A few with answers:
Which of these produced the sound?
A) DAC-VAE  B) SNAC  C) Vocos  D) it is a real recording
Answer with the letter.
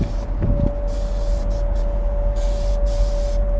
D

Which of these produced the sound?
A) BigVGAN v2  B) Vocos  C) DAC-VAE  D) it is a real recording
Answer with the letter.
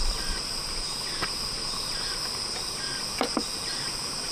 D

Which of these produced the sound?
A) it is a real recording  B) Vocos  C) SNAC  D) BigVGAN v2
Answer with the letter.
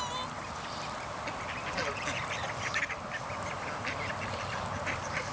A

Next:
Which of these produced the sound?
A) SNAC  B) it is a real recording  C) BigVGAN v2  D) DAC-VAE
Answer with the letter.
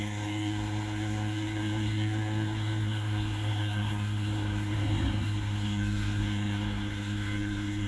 A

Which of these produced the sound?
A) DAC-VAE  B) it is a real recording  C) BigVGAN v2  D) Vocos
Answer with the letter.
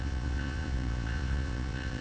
D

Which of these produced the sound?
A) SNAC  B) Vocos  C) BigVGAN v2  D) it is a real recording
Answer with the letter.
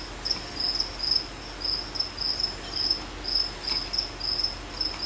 D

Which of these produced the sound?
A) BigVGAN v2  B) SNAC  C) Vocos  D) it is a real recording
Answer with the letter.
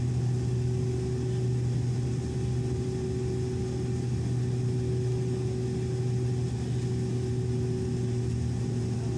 D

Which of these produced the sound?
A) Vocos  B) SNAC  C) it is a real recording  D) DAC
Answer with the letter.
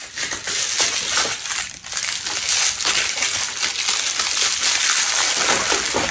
C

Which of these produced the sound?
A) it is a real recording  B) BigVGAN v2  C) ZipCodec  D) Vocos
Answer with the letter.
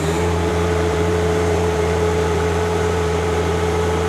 B